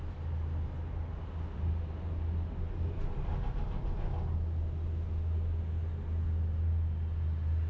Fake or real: real